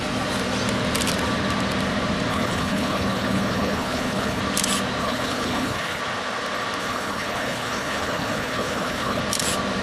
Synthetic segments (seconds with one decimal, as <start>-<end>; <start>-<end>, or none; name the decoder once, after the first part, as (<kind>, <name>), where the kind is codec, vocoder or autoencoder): 2.3-4.4 (codec, HILCodec); 5.0-6.0; 6.8-9.2